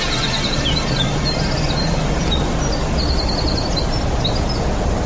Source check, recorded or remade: recorded